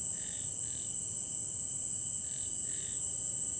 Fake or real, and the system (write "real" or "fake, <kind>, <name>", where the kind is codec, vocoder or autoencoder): real